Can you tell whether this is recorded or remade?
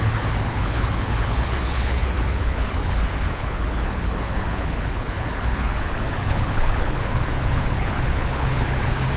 remade